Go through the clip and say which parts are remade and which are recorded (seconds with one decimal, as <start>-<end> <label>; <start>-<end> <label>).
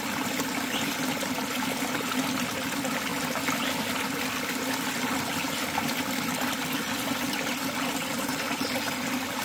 0.0-9.4 recorded